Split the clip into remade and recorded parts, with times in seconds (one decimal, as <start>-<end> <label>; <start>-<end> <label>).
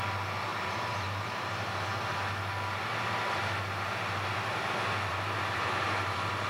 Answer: 0.0-0.5 recorded; 0.5-1.7 remade; 1.7-5.1 recorded; 5.1-6.5 remade